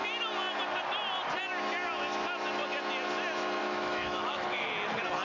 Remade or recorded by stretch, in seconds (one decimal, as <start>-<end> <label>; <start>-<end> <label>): 0.0-3.6 recorded; 3.6-4.7 remade; 4.7-5.2 recorded